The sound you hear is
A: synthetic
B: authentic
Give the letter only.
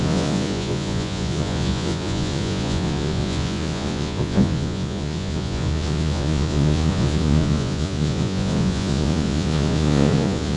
A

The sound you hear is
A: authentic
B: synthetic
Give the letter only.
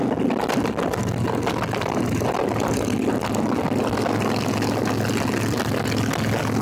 A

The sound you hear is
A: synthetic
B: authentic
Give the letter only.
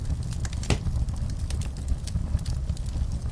B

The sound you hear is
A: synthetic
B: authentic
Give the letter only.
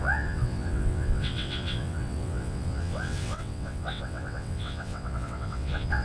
A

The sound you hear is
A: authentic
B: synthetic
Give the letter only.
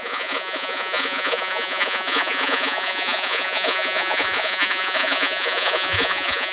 B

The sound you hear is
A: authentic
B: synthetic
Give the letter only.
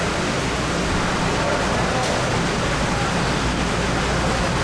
A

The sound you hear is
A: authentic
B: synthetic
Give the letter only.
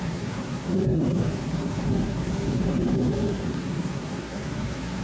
B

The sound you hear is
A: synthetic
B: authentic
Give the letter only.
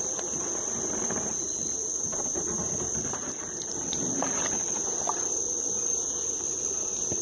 A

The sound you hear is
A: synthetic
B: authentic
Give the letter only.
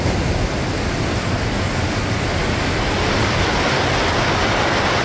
B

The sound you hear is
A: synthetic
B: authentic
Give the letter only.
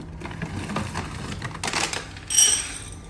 B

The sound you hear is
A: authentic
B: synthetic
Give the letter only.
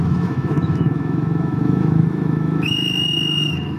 B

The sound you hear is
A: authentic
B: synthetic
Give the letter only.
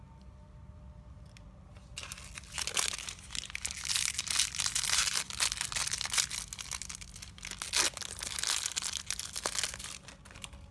A